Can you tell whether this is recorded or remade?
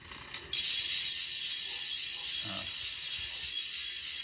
recorded